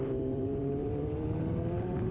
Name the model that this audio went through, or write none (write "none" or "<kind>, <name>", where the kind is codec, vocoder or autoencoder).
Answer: vocoder, BigVGAN v2